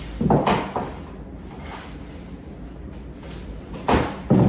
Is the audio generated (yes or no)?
no